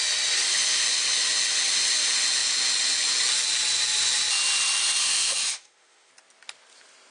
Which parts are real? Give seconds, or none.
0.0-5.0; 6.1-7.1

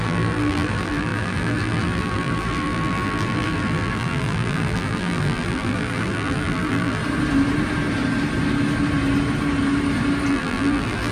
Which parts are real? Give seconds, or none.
7.0-10.3

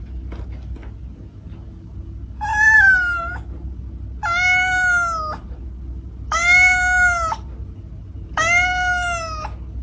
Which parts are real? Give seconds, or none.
0.0-2.5; 3.7-9.8

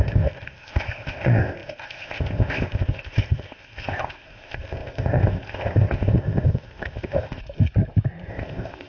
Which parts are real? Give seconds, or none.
7.4-8.3

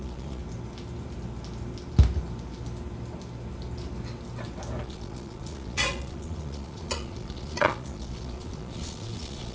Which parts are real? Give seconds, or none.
0.4-4.8

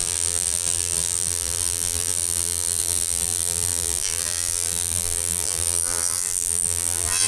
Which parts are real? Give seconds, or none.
none